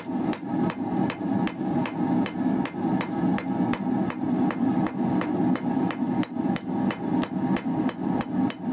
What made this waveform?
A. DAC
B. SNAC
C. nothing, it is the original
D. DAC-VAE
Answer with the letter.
C